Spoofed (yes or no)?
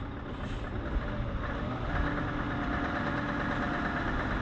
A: no